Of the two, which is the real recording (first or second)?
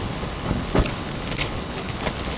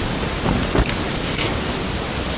second